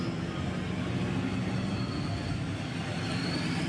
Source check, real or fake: real